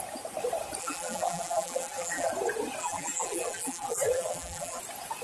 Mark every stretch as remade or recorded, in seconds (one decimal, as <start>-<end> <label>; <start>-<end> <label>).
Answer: 0.0-0.8 recorded; 0.8-2.3 remade; 2.3-2.8 recorded; 2.8-4.8 remade; 4.8-5.2 recorded